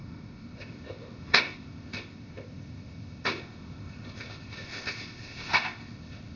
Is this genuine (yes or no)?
no